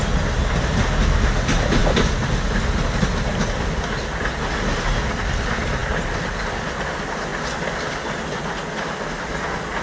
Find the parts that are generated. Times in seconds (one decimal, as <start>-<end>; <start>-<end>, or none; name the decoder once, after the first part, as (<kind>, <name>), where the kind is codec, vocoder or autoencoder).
none